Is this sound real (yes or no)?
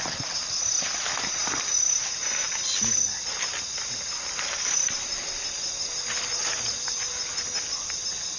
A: yes